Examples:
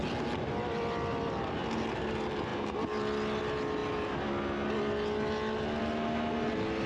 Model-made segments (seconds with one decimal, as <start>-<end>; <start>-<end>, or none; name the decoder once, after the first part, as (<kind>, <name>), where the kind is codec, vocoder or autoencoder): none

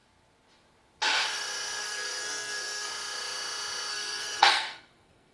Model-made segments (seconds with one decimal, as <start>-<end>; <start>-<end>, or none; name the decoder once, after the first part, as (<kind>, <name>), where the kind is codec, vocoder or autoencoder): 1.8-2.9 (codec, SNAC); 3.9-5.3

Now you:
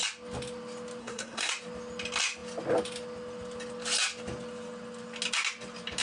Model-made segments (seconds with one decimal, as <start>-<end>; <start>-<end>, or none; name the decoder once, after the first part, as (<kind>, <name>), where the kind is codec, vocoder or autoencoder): 1.0-1.5 (codec, SNAC)

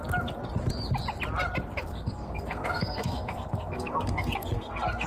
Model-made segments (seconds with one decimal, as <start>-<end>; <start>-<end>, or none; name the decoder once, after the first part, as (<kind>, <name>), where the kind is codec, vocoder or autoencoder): 1.9-5.1 (codec, SNAC)